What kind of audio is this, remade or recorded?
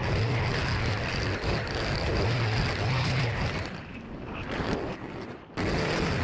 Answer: recorded